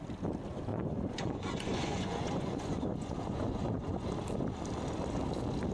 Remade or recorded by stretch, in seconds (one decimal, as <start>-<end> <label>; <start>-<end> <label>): 0.0-0.7 recorded; 0.7-4.1 remade; 4.1-5.7 recorded